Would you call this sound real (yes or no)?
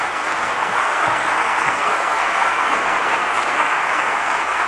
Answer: no